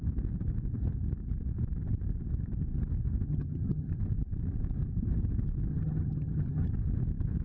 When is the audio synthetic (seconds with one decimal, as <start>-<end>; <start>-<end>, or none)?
3.3-4.0; 5.7-6.7